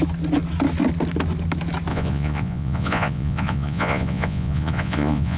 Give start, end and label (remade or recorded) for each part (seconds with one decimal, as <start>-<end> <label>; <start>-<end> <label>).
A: 0.0-1.9 recorded; 1.9-5.4 remade